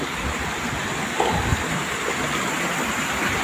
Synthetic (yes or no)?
no